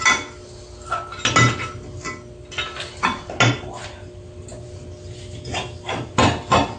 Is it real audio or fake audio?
real